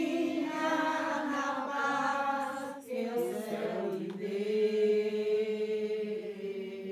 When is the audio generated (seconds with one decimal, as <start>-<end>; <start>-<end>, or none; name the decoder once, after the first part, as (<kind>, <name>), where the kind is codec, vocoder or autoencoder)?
0.9-1.6 (autoencoder, DAC-VAE); 2.1-2.7